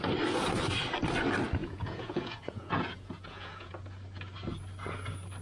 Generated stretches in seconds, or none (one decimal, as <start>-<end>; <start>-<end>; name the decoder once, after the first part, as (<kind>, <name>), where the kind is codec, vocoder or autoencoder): 1.6-3.7 (vocoder, Vocos)